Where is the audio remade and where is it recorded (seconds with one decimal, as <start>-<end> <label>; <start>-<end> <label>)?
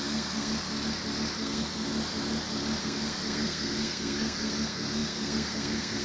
0.0-0.5 remade; 0.5-1.4 recorded; 1.4-1.9 remade; 1.9-2.8 recorded; 2.8-6.0 remade